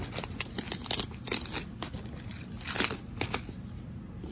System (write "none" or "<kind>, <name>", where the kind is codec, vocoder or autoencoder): none